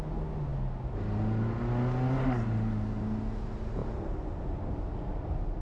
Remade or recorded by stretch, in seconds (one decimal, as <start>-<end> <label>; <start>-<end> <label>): 0.0-5.6 recorded

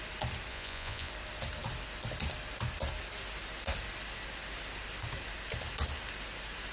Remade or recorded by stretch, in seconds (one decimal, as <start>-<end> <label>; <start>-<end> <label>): 0.0-0.5 recorded; 0.5-1.1 remade; 1.1-6.7 recorded

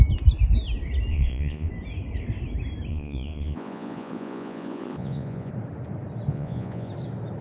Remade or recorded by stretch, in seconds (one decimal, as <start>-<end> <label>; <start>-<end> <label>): 0.0-1.1 recorded; 1.1-1.7 remade; 1.7-2.9 recorded; 2.9-5.5 remade; 5.5-6.3 recorded; 6.3-6.9 remade; 6.9-7.4 recorded

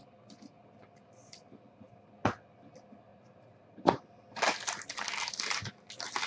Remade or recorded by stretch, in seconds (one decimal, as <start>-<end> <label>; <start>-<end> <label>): 0.0-3.1 recorded; 3.1-4.0 remade; 4.0-6.3 recorded

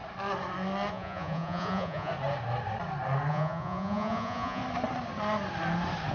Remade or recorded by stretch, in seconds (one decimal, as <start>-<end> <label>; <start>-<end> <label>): 0.0-0.9 recorded; 0.9-2.1 remade; 2.1-3.3 recorded; 3.3-4.6 remade; 4.6-6.1 recorded

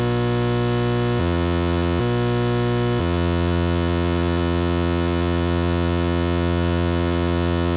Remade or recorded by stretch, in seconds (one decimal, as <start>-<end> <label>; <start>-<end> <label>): 0.0-1.2 recorded; 1.2-2.0 remade; 2.0-3.0 recorded; 3.0-7.8 remade

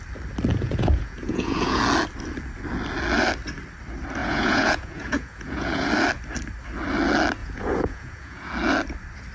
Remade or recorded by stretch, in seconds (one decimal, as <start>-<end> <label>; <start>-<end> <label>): 0.0-0.5 recorded; 0.5-1.8 remade; 1.8-4.2 recorded; 4.2-5.9 remade; 5.9-7.4 recorded; 7.4-8.5 remade; 8.5-9.3 recorded

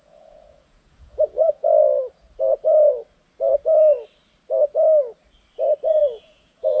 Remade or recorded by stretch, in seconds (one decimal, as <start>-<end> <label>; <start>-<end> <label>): 0.0-1.8 remade; 1.8-5.9 recorded; 5.9-6.8 remade